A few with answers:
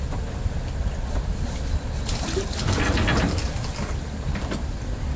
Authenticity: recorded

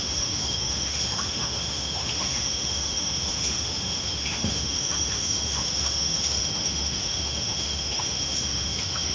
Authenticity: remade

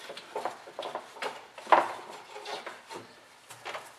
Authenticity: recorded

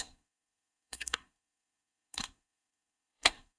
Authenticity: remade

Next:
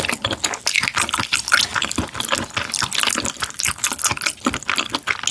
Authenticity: recorded